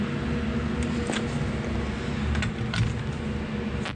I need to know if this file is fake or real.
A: real